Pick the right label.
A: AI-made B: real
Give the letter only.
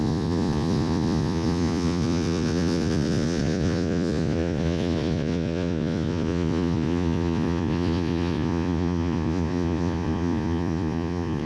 A